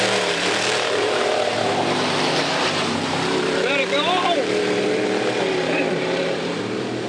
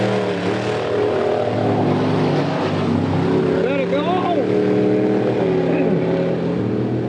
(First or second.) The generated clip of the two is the first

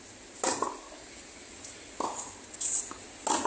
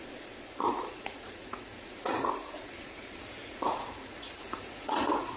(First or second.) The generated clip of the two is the second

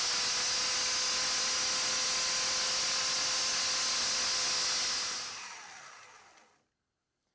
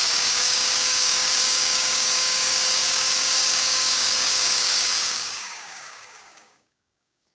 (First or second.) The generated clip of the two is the second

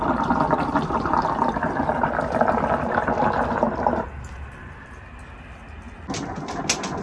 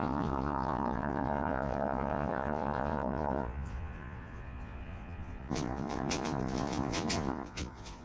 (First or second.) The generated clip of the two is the second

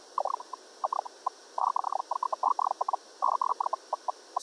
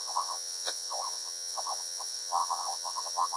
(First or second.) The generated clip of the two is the second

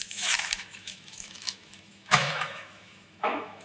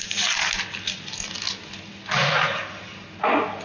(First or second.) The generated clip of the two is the first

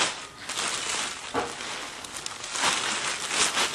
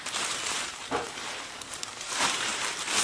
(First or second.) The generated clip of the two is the second